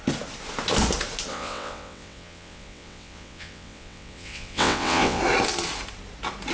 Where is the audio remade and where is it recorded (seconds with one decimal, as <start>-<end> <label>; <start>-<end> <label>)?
0.0-1.3 recorded; 1.3-5.2 remade; 5.2-6.5 recorded